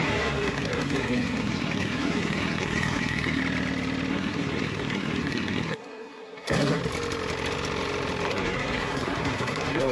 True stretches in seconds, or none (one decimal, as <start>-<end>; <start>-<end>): 3.4-4.1; 6.8-8.3